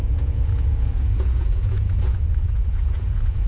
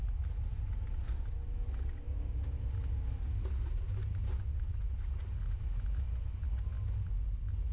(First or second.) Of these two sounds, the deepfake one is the first